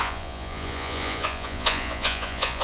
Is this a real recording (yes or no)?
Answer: no